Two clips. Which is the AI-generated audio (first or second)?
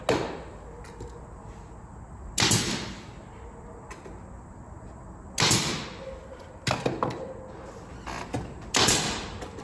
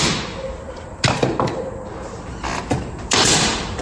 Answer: second